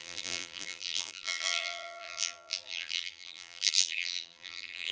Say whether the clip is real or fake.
fake